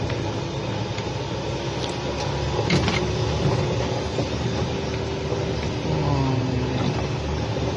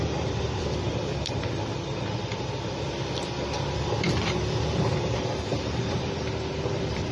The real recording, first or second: first